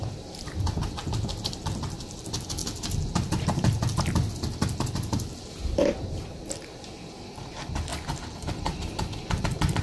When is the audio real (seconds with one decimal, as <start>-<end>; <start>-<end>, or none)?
1.0-1.5; 2.6-7.1